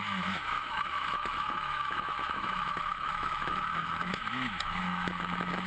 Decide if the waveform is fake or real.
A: fake